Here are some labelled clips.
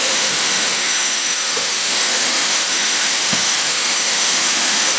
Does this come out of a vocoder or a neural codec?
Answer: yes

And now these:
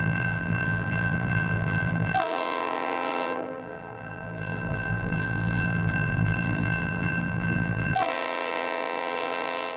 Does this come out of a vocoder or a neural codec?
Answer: yes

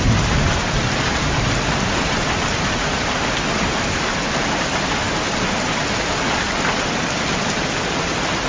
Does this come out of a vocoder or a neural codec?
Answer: no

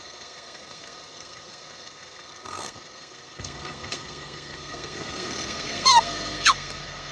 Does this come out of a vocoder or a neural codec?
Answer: yes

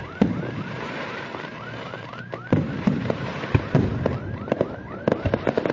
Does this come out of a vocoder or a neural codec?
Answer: yes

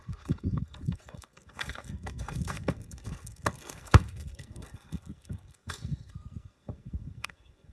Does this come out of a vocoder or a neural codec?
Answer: yes